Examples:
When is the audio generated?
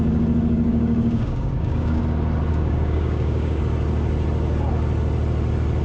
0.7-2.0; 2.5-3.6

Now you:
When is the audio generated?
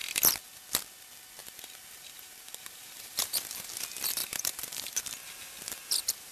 1.4-3.7; 4.2-5.0